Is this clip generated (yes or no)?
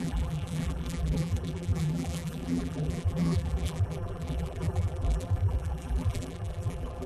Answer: yes